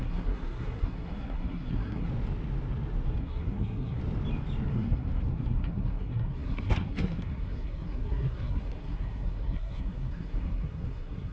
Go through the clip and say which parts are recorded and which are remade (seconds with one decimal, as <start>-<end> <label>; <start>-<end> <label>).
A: 0.0-2.1 remade; 2.1-3.2 recorded; 3.2-4.0 remade; 4.0-4.7 recorded; 4.7-11.3 remade